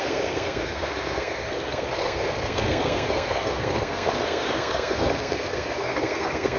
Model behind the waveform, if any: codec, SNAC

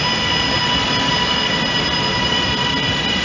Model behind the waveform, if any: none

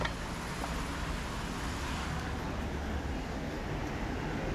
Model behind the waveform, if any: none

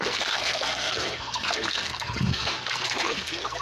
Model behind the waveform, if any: codec, SNAC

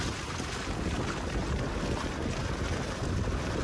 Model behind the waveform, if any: none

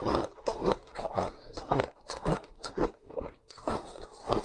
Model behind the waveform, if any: codec, SNAC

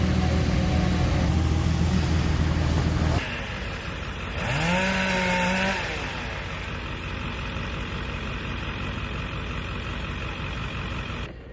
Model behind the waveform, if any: none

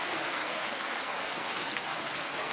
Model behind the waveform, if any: codec, SNAC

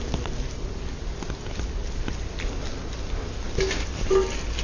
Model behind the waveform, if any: none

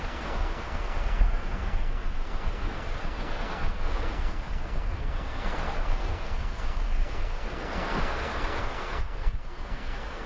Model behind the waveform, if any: codec, SNAC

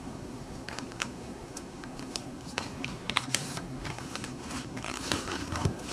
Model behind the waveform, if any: codec, SNAC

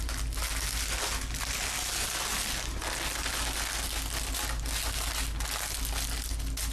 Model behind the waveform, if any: none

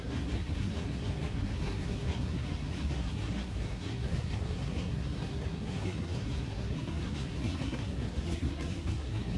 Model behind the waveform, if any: codec, SNAC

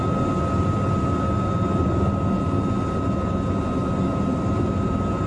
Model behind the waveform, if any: none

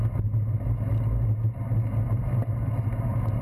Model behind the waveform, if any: none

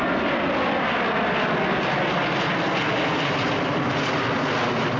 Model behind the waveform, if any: none